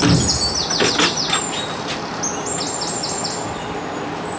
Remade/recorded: recorded